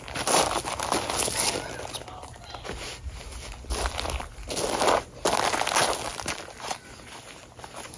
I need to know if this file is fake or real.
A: real